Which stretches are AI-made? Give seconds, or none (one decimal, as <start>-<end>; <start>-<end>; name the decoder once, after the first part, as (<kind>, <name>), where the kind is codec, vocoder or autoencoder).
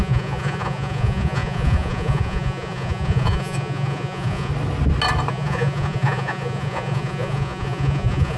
0.0-4.5 (vocoder, Vocos); 5.3-8.4